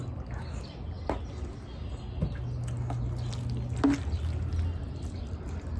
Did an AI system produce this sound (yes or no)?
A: no